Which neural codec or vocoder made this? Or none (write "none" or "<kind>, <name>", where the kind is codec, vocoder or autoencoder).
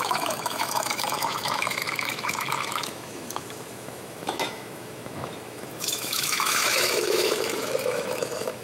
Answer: autoencoder, DAC-VAE